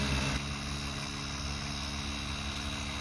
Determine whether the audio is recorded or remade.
recorded